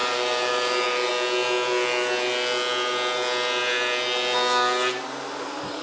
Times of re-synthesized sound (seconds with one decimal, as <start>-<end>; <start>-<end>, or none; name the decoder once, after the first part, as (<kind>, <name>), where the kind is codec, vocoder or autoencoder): 0.0-1.1 (vocoder, BigVGAN v2)